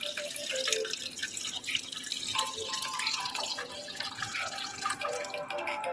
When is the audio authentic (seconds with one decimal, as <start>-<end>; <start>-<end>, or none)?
0.0-1.2; 1.8-2.3; 5.2-5.9